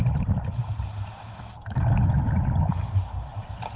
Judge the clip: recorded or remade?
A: recorded